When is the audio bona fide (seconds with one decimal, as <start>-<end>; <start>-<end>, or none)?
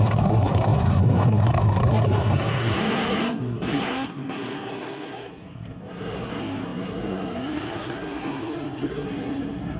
none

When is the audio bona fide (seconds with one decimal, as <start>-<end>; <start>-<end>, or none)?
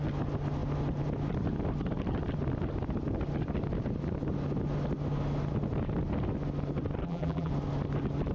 0.0-7.0; 7.5-8.3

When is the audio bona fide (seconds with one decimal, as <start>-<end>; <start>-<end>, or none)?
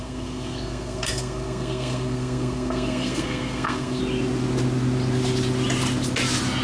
4.0-6.6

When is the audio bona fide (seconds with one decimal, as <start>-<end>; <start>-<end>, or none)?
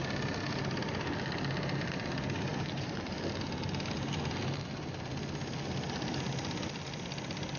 0.0-7.6